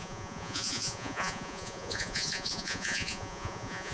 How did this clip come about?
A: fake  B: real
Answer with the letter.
A